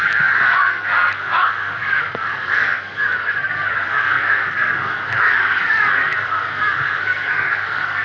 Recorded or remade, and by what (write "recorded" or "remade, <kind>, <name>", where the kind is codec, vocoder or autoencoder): remade, codec, SNAC